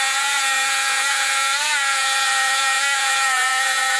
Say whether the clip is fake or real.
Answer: fake